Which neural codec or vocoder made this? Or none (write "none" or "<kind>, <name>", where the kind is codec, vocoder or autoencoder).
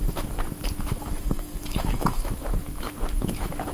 autoencoder, DAC-VAE